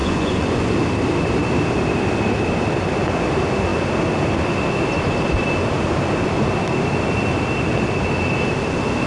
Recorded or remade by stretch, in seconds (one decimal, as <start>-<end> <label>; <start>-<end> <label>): 0.0-0.7 remade; 0.7-9.1 recorded